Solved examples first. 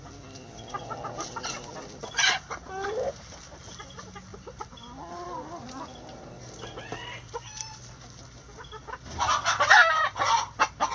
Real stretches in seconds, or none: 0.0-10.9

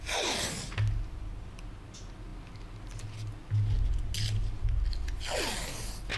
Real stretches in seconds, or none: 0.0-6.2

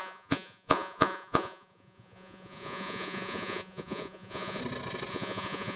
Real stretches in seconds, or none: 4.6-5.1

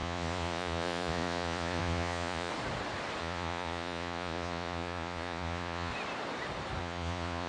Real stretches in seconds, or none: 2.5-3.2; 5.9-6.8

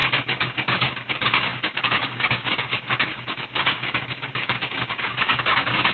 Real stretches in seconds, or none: none